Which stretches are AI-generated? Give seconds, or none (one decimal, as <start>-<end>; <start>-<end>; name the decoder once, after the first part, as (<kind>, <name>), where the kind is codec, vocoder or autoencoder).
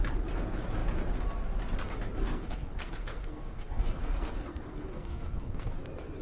2.2-5.7 (codec, SNAC)